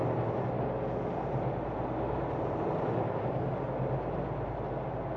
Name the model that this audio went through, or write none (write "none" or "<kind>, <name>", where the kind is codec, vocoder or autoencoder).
none